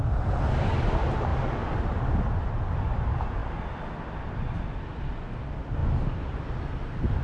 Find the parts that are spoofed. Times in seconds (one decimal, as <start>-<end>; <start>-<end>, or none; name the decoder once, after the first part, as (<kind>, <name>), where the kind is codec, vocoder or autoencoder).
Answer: none